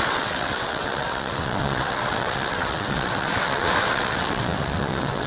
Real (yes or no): no